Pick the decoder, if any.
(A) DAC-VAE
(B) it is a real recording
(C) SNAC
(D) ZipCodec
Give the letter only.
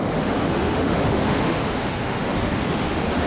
A